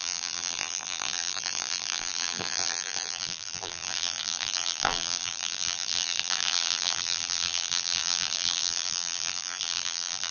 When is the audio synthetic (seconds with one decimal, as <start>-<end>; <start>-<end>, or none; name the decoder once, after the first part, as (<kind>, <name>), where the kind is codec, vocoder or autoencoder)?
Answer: 0.0-10.3 (vocoder, BigVGAN v2)